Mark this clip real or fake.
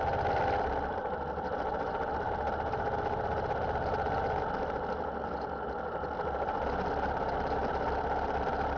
real